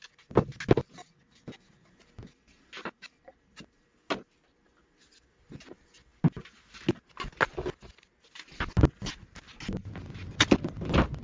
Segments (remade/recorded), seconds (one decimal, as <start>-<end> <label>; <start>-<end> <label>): 0.0-11.2 recorded